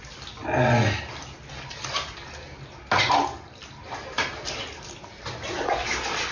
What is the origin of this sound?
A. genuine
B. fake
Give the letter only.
A